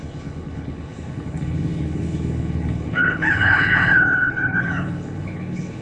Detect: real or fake fake